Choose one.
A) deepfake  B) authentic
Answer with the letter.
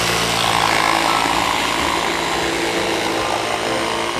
B